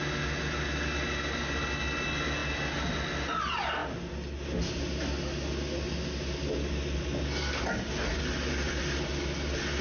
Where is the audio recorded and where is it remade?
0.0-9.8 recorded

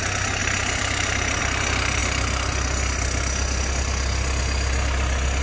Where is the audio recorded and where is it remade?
0.0-0.4 recorded; 0.4-1.4 remade; 1.4-5.4 recorded